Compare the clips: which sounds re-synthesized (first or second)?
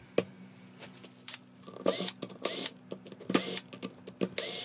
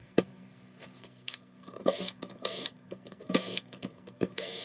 second